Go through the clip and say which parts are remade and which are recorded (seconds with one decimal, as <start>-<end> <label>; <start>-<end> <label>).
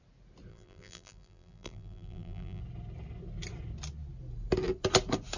0.0-0.5 recorded; 0.5-2.6 remade; 2.6-5.4 recorded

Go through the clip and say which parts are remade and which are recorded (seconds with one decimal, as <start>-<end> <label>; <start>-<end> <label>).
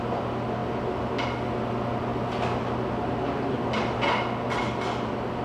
0.0-5.4 recorded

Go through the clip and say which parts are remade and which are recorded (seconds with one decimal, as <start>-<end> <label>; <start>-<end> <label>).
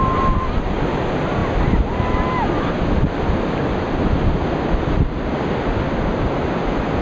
0.0-7.0 recorded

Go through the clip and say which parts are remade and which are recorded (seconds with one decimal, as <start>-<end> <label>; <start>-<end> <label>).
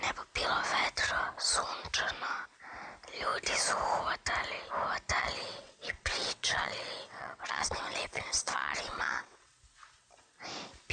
0.0-5.2 recorded; 5.2-9.5 remade; 9.5-10.9 recorded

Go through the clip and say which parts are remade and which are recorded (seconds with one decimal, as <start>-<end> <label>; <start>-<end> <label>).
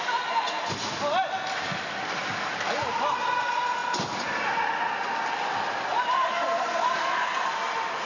0.0-8.1 recorded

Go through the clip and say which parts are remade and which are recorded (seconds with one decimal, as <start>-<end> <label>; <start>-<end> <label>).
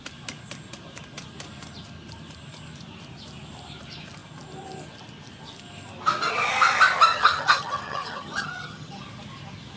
0.0-7.1 recorded; 7.1-9.0 remade; 9.0-9.8 recorded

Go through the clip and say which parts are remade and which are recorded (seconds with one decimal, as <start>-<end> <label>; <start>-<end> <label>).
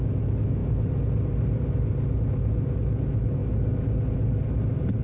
0.0-5.0 recorded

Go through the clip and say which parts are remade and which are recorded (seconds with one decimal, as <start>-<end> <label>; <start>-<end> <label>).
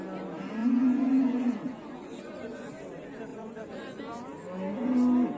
0.0-0.6 recorded; 0.6-2.7 remade; 2.7-3.3 recorded; 3.3-4.0 remade; 4.0-5.4 recorded